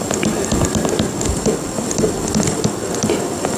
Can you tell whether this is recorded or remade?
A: remade